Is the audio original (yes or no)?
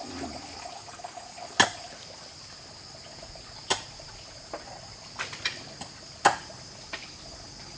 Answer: yes